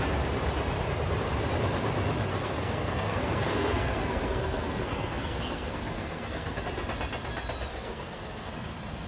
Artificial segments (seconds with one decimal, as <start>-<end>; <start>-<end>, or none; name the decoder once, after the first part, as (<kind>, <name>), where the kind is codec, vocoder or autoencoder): 2.3-6.6 (codec, SNAC); 7.7-8.5